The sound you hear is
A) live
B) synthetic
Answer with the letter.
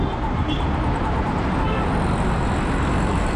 A